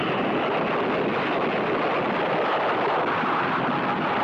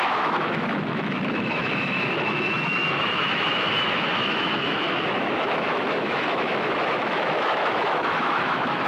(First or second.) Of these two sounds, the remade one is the second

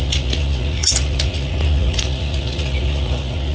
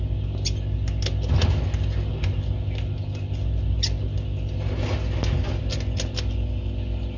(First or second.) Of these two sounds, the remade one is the first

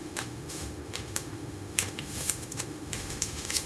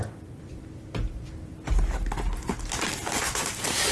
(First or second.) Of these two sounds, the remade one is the first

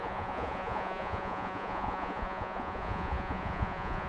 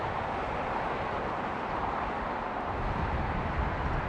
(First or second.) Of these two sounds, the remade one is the first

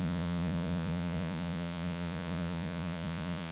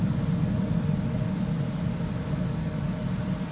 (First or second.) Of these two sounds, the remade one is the first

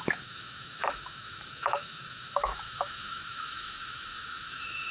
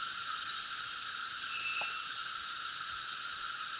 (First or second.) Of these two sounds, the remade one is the first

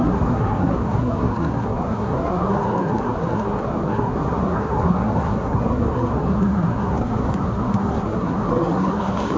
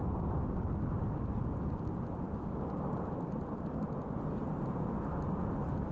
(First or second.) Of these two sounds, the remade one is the first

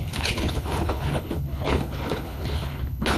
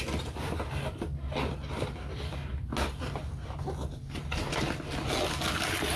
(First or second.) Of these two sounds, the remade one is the first